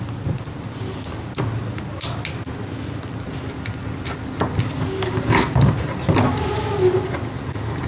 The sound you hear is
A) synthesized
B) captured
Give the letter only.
B